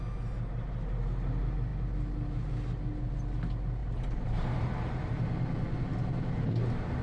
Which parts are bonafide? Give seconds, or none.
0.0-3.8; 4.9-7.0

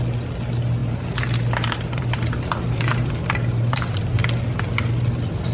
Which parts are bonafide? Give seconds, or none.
0.0-0.8; 4.1-5.5

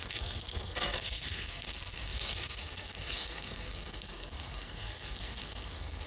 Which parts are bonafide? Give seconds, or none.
none

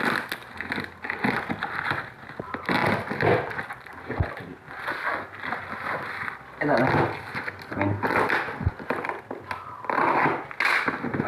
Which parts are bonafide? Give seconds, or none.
0.0-11.3

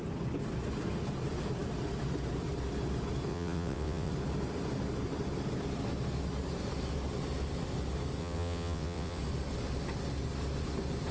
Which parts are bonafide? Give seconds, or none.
0.0-3.3; 4.1-8.2; 9.2-11.1

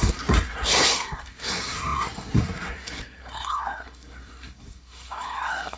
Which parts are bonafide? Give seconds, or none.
none

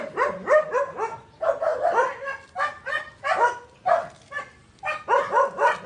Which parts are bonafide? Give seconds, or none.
0.0-5.9

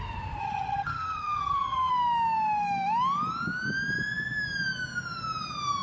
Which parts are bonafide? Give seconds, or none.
0.0-0.4; 1.9-5.8